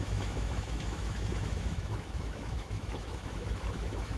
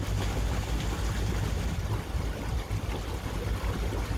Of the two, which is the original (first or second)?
second